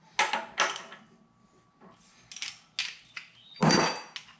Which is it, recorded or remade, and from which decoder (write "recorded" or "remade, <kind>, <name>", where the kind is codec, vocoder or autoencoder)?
recorded